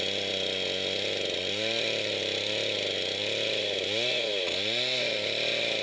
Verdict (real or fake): real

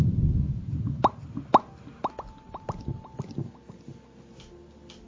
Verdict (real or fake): real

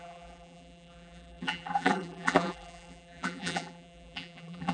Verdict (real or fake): fake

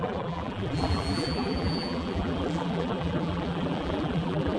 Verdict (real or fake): fake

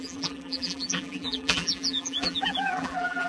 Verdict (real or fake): fake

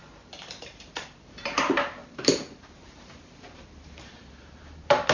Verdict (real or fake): fake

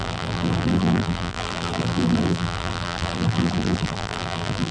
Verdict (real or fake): fake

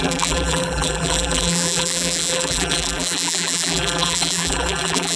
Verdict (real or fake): fake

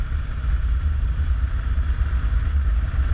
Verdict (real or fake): real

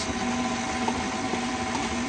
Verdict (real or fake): real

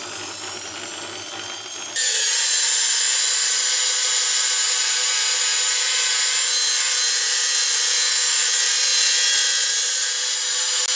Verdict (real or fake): real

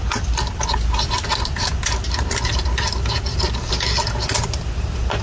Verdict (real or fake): real